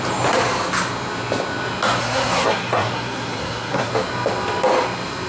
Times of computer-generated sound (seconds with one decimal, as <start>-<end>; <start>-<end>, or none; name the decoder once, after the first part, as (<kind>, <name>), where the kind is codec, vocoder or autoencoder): 2.0-3.9 (codec, SNAC)